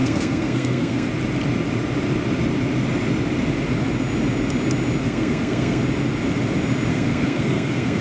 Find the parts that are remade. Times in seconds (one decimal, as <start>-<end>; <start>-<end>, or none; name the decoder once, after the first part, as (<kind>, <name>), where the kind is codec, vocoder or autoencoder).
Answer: 0.0-1.1 (codec, SNAC); 5.0-5.8; 6.9-8.0